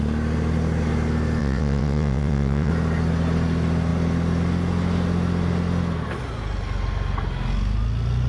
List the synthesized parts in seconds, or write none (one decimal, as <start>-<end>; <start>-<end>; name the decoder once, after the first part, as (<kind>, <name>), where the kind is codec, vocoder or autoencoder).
1.4-2.7 (vocoder, WaveNeXt)